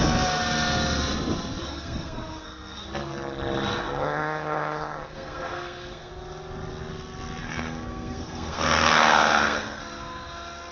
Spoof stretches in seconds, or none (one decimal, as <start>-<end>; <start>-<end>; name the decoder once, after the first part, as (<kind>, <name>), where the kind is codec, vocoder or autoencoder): 1.6-2.8 (codec, SNAC); 3.7-6.1; 7.4-9.8